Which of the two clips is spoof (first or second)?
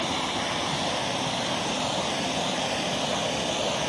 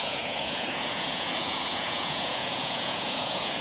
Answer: second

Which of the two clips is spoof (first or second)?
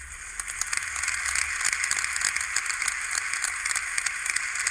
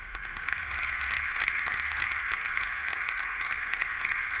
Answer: second